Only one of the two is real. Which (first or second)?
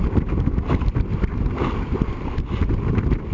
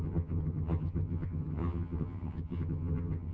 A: first